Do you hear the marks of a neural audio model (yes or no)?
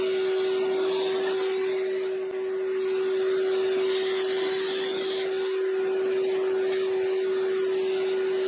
no